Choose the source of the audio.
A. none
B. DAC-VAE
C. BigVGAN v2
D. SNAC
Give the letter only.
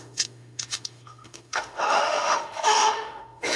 B